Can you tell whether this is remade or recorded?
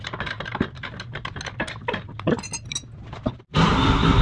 recorded